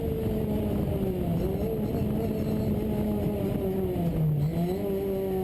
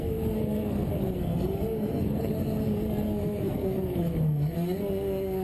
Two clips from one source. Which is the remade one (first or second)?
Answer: second